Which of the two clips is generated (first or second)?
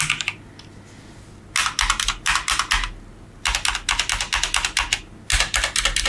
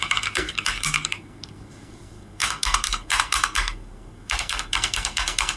second